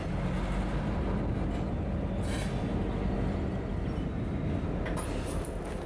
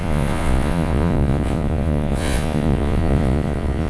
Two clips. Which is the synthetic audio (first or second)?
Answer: second